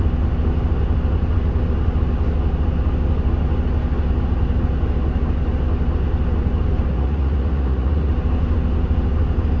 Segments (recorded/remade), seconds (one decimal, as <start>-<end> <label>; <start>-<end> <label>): 0.0-6.9 recorded; 6.9-8.1 remade; 8.1-9.6 recorded